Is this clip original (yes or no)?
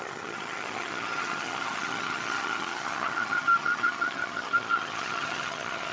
no